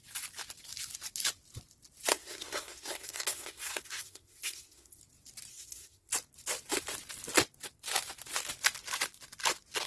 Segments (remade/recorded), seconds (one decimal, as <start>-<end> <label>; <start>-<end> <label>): 0.0-2.1 recorded; 2.1-5.0 remade; 5.0-5.5 recorded; 5.5-6.1 remade; 6.1-9.9 recorded